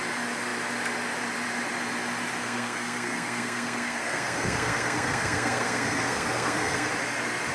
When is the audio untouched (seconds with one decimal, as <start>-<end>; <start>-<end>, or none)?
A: 0.0-2.4; 6.9-7.5

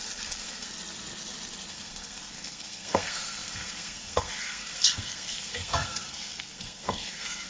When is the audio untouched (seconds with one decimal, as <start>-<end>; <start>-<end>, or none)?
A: 0.7-1.7

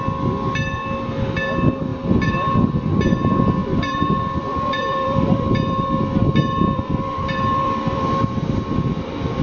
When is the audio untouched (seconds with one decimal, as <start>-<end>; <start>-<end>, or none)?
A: 0.0-1.9; 3.0-3.6; 8.2-9.4

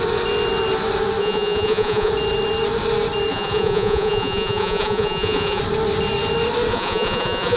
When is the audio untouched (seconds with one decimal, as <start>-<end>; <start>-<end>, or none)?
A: 0.0-1.2; 2.1-3.3; 5.6-6.7

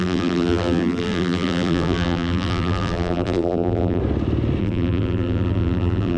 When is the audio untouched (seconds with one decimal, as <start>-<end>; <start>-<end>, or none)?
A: 4.0-4.6

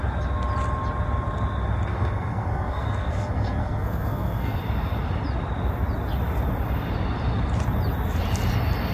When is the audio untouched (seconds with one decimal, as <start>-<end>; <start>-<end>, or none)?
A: 0.0-1.9; 4.6-8.9

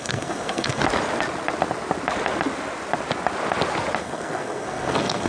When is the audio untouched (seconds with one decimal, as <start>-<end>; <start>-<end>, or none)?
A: 0.8-4.0

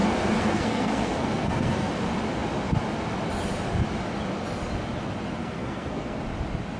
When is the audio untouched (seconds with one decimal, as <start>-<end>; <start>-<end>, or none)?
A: 1.9-5.4; 6.2-6.8